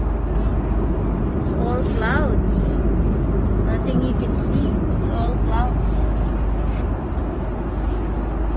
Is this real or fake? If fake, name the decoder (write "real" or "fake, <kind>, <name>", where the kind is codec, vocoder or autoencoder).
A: real